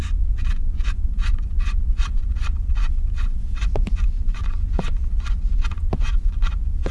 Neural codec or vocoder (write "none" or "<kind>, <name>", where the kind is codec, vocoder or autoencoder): vocoder, Vocos